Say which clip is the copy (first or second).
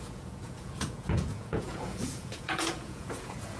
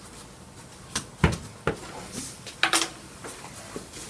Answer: first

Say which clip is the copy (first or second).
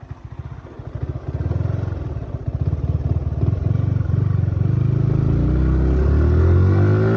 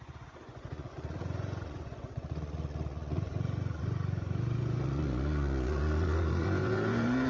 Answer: second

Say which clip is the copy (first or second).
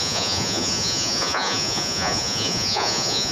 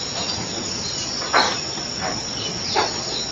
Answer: first